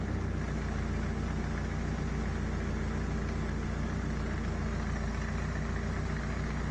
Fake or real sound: real